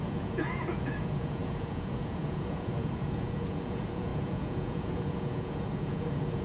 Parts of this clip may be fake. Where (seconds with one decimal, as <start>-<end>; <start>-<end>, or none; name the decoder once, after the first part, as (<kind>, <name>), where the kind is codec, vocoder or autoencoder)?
0.0-6.4 (vocoder, Vocos)